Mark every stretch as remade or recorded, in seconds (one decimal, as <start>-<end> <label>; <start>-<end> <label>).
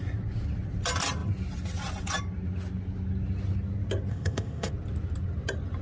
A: 0.0-4.1 recorded; 4.1-4.7 remade; 4.7-5.8 recorded